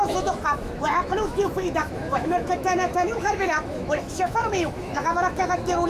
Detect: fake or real fake